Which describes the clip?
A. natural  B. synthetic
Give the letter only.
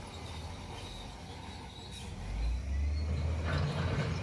A